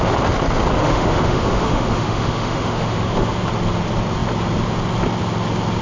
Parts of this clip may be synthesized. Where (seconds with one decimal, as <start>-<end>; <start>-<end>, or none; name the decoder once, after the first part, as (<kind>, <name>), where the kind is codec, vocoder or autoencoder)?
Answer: 0.8-3.3 (autoencoder, DAC-VAE)